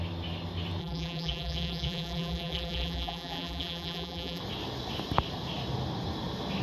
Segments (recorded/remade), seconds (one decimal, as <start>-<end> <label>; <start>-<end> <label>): 0.0-0.8 recorded; 0.8-4.4 remade; 4.4-6.6 recorded